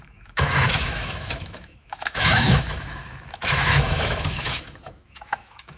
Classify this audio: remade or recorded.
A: remade